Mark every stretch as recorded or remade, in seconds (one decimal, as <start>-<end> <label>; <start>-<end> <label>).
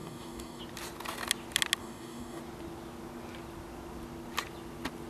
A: 0.0-0.6 remade; 0.6-1.8 recorded; 1.8-2.4 remade; 2.4-5.1 recorded